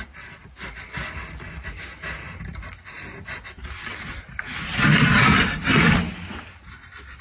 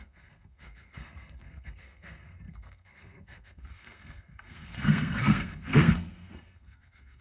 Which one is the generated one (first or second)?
second